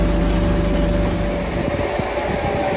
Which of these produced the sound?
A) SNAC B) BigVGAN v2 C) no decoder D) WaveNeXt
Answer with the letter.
C